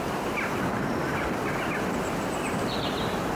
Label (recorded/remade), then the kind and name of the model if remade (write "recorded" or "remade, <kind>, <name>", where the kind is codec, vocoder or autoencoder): recorded